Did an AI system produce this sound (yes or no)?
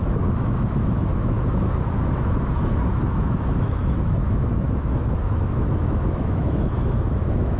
yes